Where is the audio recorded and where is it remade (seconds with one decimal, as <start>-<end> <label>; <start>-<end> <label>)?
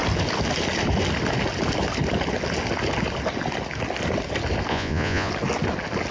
0.0-4.7 recorded; 4.7-5.3 remade; 5.3-6.1 recorded